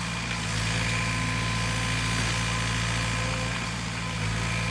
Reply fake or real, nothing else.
real